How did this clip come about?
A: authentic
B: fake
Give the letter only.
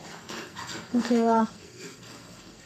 B